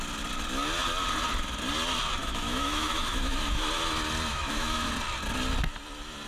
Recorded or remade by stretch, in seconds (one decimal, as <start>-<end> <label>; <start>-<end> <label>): 0.0-2.2 recorded; 2.2-3.6 remade; 3.6-4.3 recorded; 4.3-4.9 remade; 4.9-6.3 recorded